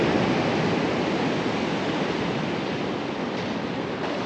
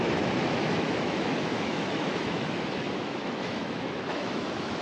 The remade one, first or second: second